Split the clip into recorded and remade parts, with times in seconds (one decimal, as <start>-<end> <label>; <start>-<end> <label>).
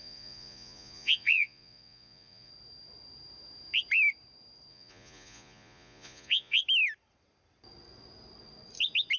0.0-2.5 remade; 2.5-4.7 recorded; 4.7-6.6 remade; 6.6-9.2 recorded